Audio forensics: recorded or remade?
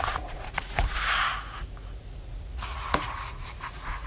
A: remade